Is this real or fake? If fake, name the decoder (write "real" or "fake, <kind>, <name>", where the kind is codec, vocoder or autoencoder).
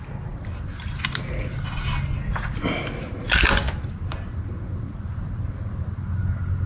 real